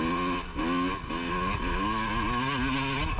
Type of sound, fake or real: real